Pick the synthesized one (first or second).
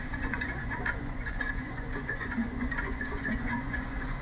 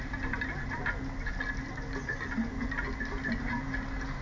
first